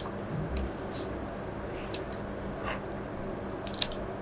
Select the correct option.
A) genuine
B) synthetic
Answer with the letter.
A